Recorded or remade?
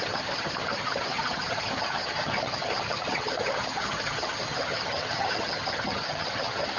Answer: remade